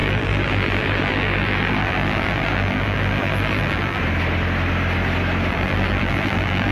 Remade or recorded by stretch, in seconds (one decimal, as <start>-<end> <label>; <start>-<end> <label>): 0.0-4.0 remade; 4.0-5.5 recorded; 5.5-6.7 remade